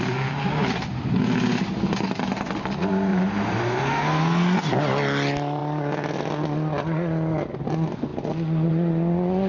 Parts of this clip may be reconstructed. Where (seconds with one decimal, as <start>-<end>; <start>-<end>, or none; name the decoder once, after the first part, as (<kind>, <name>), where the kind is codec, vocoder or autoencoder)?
3.1-3.8 (vocoder, BigVGAN v2)